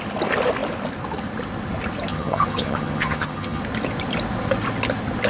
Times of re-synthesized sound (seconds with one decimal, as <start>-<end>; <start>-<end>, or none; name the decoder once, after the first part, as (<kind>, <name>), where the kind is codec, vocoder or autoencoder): 2.1-3.6 (vocoder, HiFi-GAN)